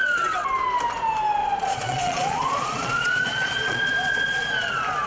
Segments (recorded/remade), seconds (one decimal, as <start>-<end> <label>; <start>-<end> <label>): 0.0-1.4 recorded; 1.4-4.5 remade; 4.5-5.1 recorded